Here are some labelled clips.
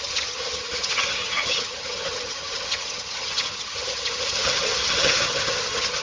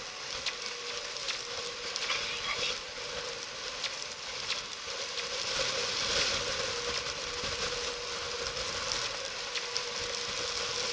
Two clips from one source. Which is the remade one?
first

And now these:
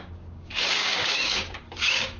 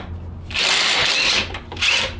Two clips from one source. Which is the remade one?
first